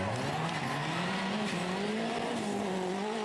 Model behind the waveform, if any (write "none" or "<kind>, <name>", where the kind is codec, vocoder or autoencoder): none